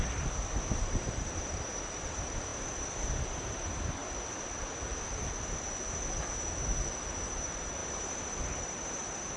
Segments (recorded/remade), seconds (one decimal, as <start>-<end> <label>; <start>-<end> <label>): 0.0-4.0 remade; 4.0-7.3 recorded; 7.3-9.4 remade